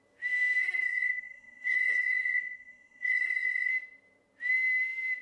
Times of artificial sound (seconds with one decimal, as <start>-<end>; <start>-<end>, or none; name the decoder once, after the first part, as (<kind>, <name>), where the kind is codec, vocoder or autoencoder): 0.6-3.7 (codec, SNAC)